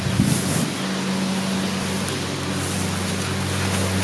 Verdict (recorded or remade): recorded